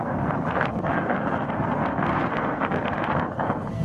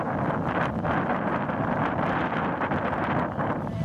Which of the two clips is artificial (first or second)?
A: first